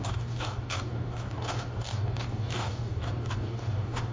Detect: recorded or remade remade